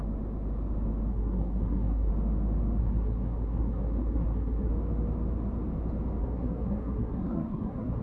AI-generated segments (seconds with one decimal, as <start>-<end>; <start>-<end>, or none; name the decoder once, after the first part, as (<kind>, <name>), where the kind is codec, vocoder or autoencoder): 1.1-2.1 (codec, SNAC); 2.8-4.7; 6.2-8.0